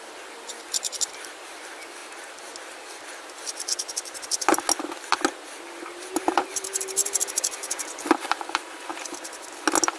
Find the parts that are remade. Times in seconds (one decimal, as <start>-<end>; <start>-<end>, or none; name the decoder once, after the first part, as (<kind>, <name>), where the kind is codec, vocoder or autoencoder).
0.0-2.0 (vocoder, BigVGAN v2); 6.0-7.0; 8.1-8.9